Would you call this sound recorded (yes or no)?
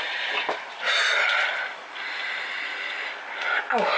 yes